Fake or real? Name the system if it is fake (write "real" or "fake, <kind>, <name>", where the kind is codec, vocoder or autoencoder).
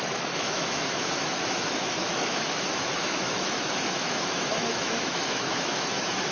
fake, autoencoder, DAC-VAE